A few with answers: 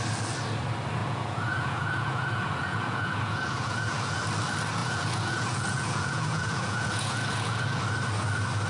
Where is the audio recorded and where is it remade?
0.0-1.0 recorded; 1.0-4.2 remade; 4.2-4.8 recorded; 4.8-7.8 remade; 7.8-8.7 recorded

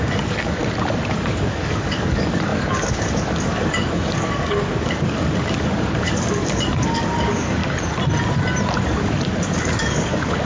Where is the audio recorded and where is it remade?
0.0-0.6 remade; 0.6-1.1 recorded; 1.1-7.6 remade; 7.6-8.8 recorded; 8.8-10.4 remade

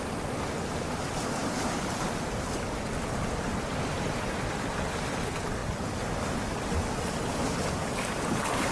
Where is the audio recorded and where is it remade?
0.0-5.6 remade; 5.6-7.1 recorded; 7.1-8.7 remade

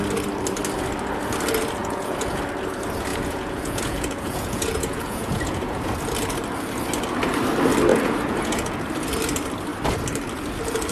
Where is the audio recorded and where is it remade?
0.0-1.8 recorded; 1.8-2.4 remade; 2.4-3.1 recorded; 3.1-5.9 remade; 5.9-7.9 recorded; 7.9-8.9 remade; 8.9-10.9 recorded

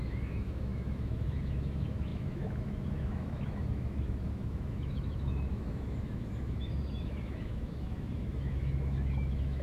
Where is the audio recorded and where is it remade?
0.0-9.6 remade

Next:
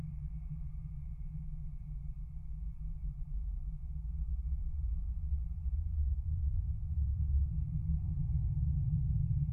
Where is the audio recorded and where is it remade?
0.0-4.3 recorded; 4.3-5.0 remade; 5.0-6.0 recorded; 6.0-6.6 remade; 6.6-9.5 recorded